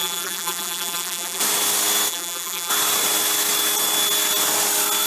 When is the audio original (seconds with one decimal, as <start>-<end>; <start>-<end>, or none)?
1.4-2.1; 2.7-5.1